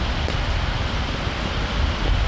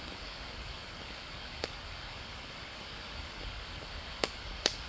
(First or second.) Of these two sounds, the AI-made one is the second